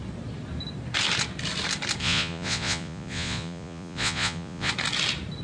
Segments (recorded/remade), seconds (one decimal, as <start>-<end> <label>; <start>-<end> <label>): 0.0-2.0 recorded; 2.0-4.7 remade; 4.7-5.4 recorded